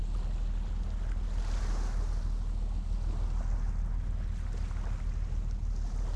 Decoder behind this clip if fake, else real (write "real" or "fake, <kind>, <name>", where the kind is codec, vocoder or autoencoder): real